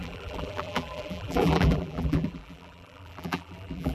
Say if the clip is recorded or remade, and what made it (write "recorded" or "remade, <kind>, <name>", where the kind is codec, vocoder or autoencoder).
remade, vocoder, BigVGAN v2